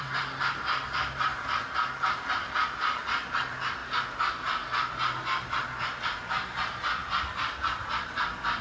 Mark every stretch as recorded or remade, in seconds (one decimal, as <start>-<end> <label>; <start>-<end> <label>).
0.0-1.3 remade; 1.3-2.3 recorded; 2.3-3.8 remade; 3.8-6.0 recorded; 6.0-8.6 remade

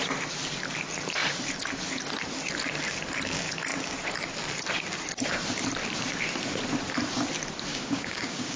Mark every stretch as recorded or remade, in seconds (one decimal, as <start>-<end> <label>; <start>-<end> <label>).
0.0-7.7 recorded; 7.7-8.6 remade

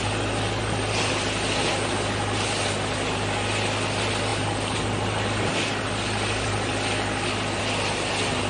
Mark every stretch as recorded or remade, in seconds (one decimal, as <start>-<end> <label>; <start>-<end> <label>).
0.0-8.5 recorded

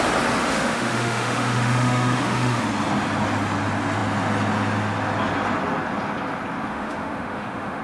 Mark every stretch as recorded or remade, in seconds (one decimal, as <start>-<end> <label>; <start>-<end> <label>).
0.0-0.4 recorded; 0.4-2.6 remade; 2.6-6.7 recorded; 6.7-7.8 remade

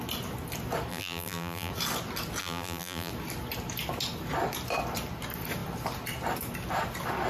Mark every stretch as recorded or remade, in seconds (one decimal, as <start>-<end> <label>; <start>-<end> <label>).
0.0-0.9 recorded; 0.9-1.7 remade; 1.7-2.4 recorded; 2.4-3.1 remade; 3.1-7.3 recorded